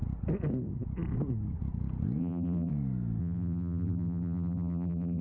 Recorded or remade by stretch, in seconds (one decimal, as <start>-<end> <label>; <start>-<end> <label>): 0.0-2.2 recorded; 2.2-2.7 remade; 2.7-3.2 recorded; 3.2-5.2 remade